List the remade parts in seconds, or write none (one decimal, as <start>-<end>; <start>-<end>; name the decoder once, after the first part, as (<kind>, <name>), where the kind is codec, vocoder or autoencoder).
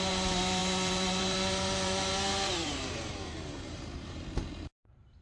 0.0-5.2 (vocoder, BigVGAN v2)